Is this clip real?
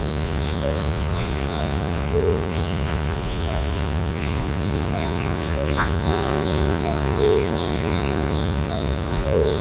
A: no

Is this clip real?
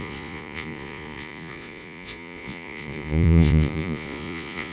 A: no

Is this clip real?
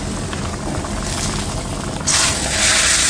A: yes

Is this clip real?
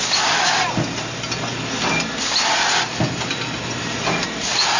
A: yes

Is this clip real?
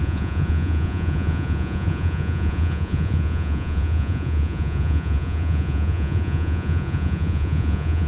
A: no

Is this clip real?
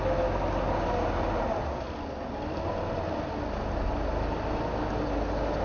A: yes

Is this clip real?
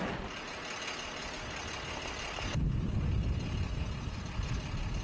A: yes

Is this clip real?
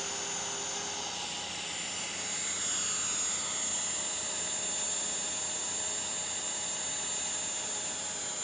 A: yes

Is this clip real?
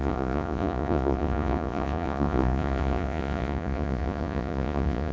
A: no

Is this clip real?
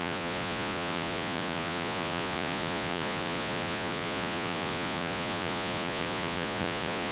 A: no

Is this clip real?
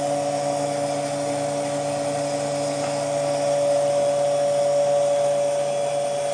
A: yes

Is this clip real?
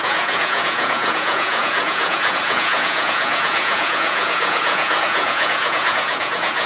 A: no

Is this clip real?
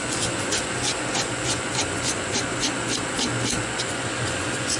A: no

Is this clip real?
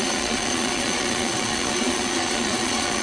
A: no